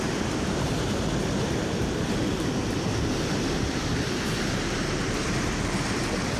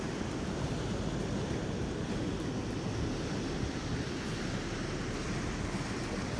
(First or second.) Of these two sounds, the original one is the second